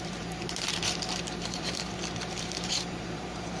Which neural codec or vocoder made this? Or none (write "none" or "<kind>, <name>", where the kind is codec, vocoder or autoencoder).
vocoder, BigVGAN v2